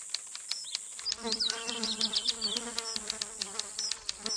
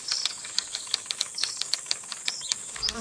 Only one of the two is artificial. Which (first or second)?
second